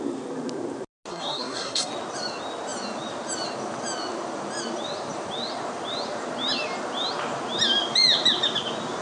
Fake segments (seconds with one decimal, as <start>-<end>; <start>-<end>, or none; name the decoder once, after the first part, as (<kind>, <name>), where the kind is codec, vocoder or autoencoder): 1.1-1.9 (codec, SNAC)